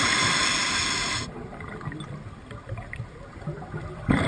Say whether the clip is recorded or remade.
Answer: recorded